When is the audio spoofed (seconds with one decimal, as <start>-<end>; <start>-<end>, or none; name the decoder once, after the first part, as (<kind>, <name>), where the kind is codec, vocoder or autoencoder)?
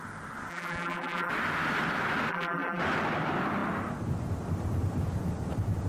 0.5-1.3 (vocoder, BigVGAN v2); 2.3-2.8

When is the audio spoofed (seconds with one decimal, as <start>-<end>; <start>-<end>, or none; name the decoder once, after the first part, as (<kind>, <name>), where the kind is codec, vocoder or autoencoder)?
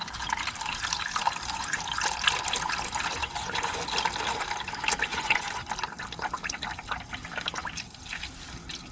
3.2-3.8 (vocoder, Vocos); 5.1-5.7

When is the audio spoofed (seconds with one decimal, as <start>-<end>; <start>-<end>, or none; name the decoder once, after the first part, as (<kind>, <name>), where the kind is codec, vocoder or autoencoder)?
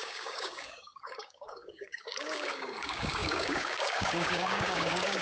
0.0-5.2 (codec, DAC)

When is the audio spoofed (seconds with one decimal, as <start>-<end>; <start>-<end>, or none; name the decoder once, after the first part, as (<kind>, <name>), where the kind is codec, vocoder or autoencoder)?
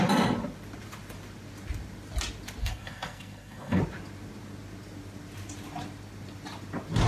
2.6-3.8 (codec, SNAC)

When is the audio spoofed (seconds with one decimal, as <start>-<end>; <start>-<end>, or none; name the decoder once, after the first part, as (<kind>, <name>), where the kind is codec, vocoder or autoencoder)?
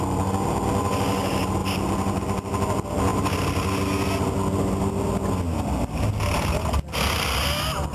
1.6-2.2 (vocoder, BigVGAN v2)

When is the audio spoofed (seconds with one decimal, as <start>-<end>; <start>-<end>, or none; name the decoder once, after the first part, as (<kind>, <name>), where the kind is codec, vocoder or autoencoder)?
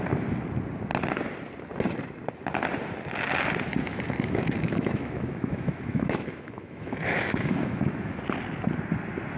3.8-8.2 (autoencoder, DAC-VAE)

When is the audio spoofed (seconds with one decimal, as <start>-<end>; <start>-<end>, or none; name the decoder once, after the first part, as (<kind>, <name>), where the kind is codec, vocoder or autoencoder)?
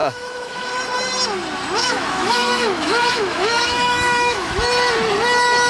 0.0-0.7 (autoencoder, DAC-VAE); 1.8-4.7